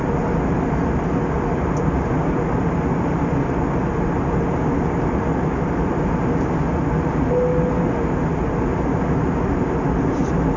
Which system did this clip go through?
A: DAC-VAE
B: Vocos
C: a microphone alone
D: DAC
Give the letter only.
C